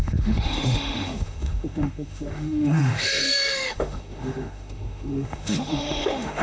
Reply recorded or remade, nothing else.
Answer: remade